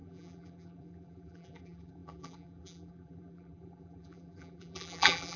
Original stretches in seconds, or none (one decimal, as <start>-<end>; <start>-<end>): none

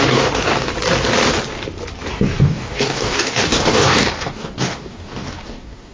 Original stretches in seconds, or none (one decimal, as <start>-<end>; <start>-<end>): 0.7-2.1

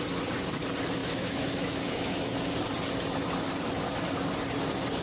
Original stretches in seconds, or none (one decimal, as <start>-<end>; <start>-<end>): 0.0-1.0; 2.6-5.0

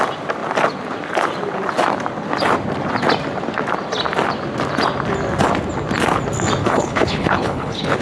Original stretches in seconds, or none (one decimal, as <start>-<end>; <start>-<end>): 0.0-6.6

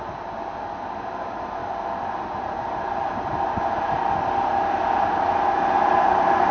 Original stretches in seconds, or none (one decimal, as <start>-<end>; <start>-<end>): 0.0-6.5

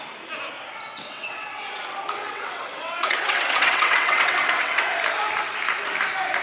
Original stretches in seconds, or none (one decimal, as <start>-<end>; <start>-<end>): 0.0-0.9; 1.6-2.2; 4.8-6.4

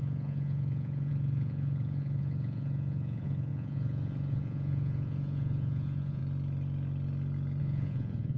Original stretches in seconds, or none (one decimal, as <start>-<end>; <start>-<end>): 6.2-7.6

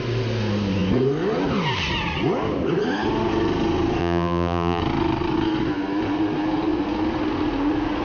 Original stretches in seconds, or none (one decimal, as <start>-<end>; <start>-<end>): 0.0-4.0; 4.8-8.0